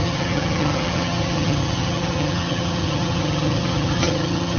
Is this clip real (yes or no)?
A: no